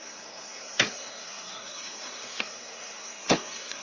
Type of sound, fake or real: fake